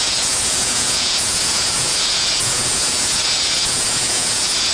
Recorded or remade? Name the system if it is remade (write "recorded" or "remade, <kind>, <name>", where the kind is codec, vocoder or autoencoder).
remade, vocoder, Vocos